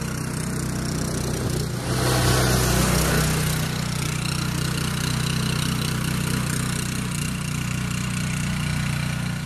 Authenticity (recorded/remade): recorded